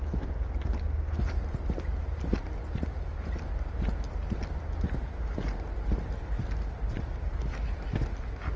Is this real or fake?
real